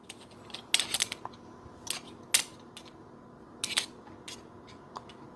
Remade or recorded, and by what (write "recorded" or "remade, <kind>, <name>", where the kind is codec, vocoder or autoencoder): recorded